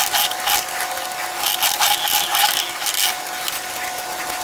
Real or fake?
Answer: real